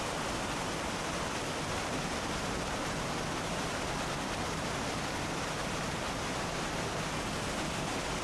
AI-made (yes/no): no